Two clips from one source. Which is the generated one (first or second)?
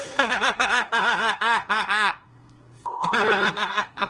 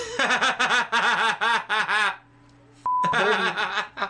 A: first